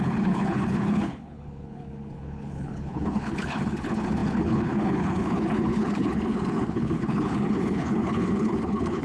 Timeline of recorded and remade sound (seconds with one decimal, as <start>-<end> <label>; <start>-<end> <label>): 0.0-9.0 remade